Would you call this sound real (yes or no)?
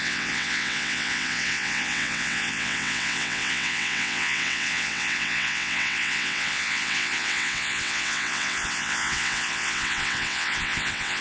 no